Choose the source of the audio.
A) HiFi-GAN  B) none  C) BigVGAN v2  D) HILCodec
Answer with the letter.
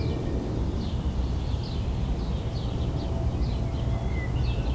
B